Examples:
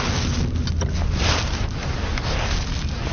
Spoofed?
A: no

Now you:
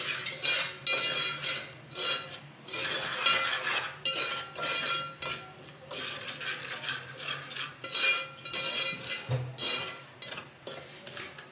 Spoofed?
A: no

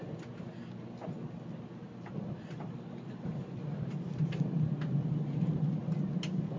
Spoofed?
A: no